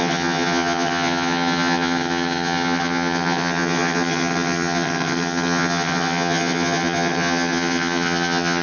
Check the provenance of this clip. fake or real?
fake